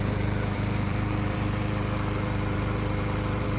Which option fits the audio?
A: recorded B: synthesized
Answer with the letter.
B